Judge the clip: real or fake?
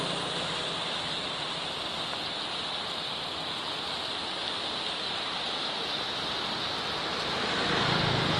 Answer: real